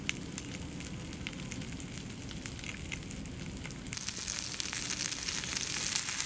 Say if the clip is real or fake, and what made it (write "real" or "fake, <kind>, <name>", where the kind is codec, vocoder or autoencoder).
real